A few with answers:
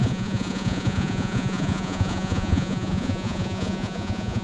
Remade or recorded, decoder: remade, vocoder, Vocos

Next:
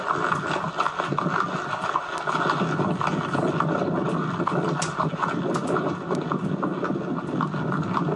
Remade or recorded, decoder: recorded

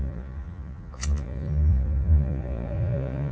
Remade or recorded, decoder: remade, vocoder, Vocos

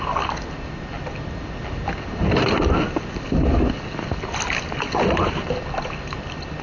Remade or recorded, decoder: recorded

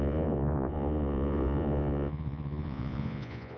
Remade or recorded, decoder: remade, vocoder, Vocos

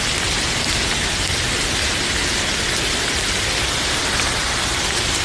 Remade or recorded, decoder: recorded